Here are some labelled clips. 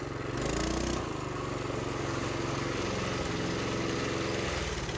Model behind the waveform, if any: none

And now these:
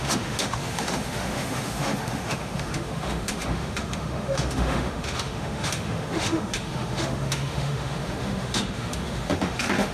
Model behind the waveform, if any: autoencoder, DAC-VAE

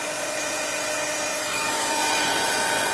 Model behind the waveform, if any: vocoder, Vocos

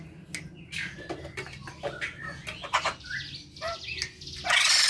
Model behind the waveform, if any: none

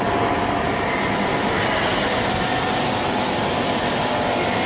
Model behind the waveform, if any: none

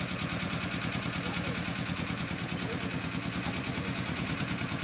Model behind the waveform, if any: vocoder, Vocos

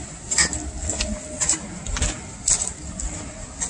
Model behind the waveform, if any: none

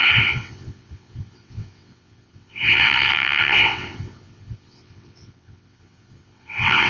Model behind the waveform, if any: vocoder, WaveNeXt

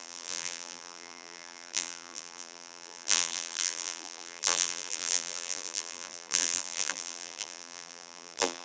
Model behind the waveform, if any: vocoder, BigVGAN v2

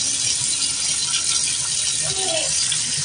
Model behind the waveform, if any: none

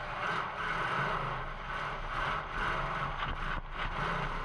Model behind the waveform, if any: none